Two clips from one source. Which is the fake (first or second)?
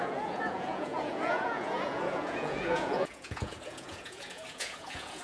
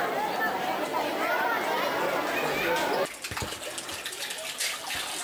first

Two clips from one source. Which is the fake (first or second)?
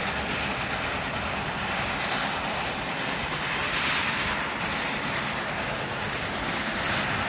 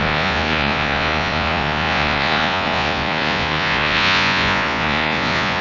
second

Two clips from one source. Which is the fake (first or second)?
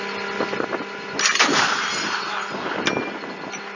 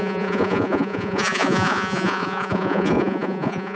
second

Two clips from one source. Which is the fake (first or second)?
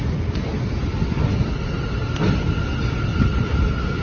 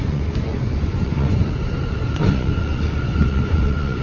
second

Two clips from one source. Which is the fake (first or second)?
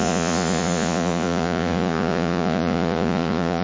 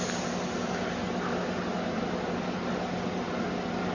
first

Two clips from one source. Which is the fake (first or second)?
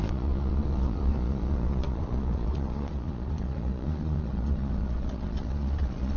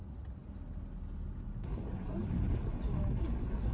first